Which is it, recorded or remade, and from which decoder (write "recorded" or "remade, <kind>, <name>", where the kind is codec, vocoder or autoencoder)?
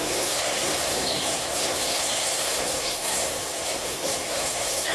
remade, codec, SNAC